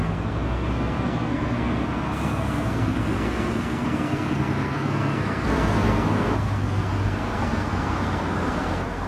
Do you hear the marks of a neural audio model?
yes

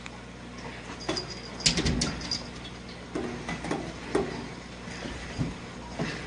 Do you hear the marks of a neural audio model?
no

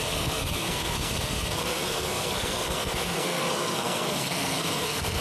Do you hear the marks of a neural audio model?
yes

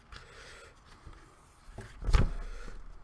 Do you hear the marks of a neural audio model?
no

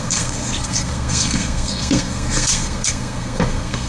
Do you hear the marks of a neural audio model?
yes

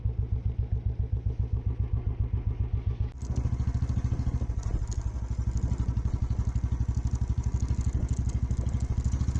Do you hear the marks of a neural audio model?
no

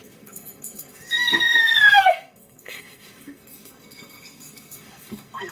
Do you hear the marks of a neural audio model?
yes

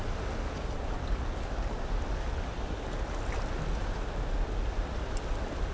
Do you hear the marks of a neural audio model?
no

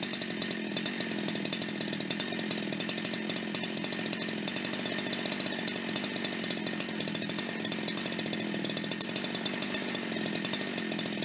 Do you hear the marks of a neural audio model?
no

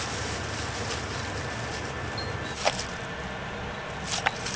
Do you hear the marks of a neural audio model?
no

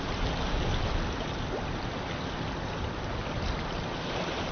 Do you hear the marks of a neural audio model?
no